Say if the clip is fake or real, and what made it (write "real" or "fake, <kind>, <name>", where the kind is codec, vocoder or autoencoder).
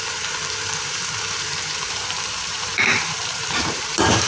fake, vocoder, BigVGAN v2